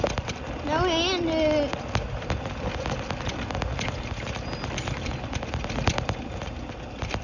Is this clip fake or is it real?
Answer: real